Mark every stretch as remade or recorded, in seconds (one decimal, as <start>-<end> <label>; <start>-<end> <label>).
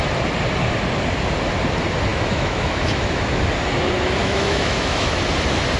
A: 0.0-2.1 recorded; 2.1-3.4 remade; 3.4-4.2 recorded; 4.2-5.2 remade; 5.2-5.8 recorded